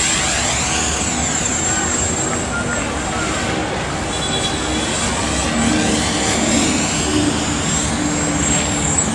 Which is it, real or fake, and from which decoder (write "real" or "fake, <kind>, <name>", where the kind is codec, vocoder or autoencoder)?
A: real